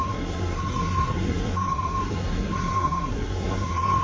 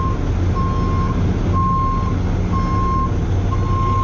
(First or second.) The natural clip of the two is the second